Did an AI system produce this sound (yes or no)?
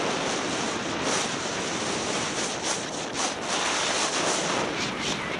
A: no